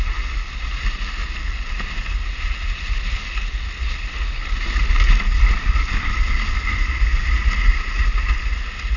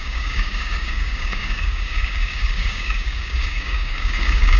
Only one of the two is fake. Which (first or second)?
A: second